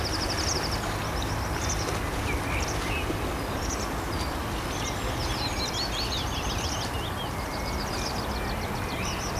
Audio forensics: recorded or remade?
recorded